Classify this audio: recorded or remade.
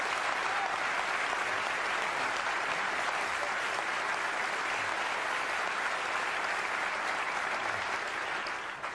recorded